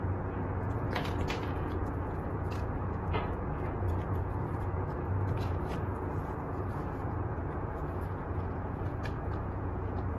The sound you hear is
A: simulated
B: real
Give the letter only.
A